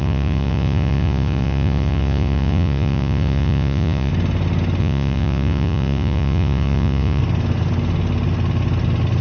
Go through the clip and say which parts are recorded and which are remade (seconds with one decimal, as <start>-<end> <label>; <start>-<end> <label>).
0.0-4.1 remade; 4.1-4.8 recorded; 4.8-7.2 remade; 7.2-9.2 recorded